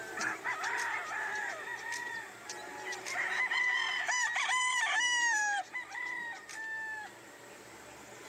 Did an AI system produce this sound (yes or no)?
yes